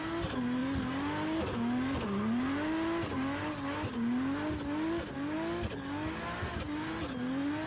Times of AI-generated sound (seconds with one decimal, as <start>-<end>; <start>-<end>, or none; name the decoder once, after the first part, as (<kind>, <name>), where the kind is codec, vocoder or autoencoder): none